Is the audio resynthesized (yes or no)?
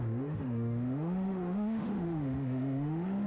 yes